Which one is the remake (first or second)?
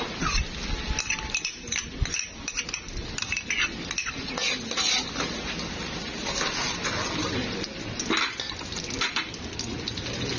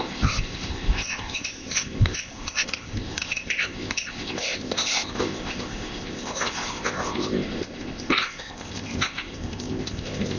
second